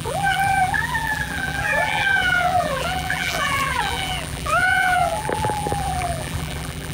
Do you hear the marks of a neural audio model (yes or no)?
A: yes